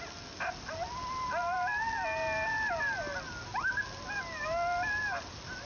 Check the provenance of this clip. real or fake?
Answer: real